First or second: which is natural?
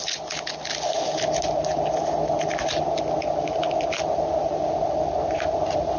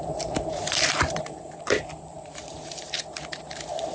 first